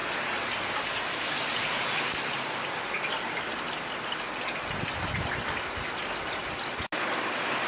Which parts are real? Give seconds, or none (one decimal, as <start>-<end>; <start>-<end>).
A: 0.0-7.7